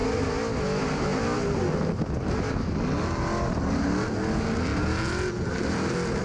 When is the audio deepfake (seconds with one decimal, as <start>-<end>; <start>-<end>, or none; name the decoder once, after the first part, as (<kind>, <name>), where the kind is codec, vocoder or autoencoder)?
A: none